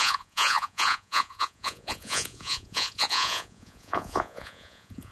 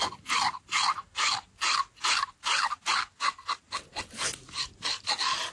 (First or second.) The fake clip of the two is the first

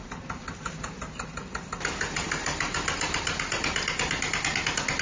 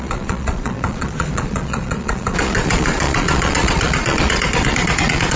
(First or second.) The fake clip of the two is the second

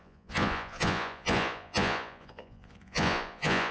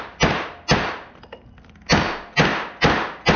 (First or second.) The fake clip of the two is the first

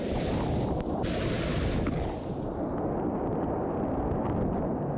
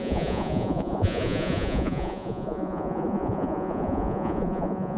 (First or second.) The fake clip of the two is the second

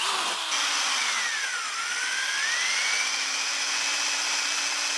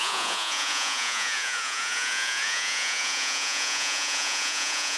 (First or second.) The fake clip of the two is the second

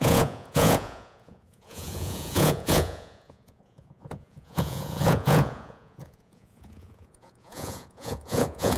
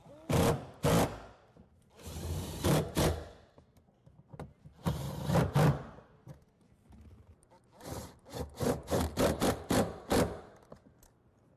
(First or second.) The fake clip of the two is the first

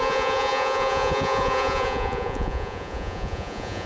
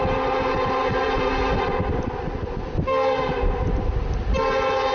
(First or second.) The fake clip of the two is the first